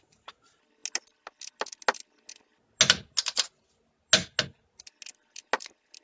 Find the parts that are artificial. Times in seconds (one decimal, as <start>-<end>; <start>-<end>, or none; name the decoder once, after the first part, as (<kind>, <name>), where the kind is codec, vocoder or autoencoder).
none

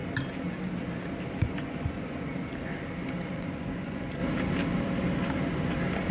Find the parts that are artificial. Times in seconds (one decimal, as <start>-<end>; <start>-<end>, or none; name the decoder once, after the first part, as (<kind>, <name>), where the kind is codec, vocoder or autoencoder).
1.4-2.3 (vocoder, Vocos); 3.3-4.2

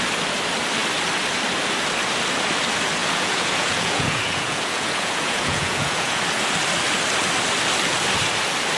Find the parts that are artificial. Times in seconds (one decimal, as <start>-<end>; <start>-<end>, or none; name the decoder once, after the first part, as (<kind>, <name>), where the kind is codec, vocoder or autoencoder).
3.0-6.2 (vocoder, Vocos)

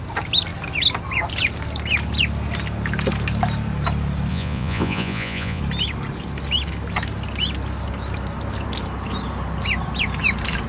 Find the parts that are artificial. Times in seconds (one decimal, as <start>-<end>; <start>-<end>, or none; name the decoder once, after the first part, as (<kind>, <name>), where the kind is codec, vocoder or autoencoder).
4.3-5.6 (vocoder, Vocos)